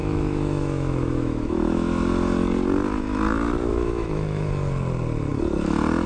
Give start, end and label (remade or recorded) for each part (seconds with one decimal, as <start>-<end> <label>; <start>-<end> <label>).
0.0-2.0 remade; 2.0-3.7 recorded; 3.7-4.5 remade; 4.5-6.1 recorded